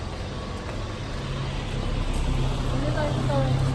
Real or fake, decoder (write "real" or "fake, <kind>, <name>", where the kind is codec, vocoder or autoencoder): real